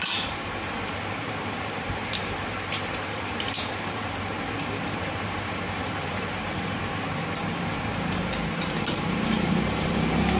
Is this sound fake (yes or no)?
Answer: yes